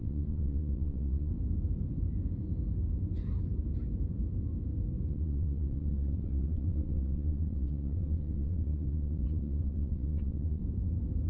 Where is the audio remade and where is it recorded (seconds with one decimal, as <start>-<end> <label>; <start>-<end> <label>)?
0.0-1.3 remade; 1.3-5.1 recorded; 5.1-10.6 remade; 10.6-11.3 recorded